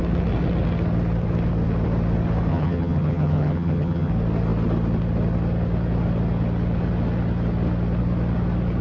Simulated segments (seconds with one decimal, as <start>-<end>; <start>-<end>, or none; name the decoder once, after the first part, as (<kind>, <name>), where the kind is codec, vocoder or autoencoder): 2.5-4.1 (vocoder, HiFi-GAN)